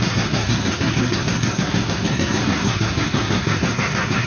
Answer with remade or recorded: remade